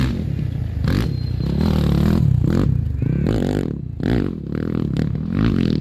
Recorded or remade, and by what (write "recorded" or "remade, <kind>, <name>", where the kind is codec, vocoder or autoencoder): recorded